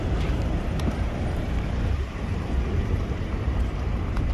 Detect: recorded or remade remade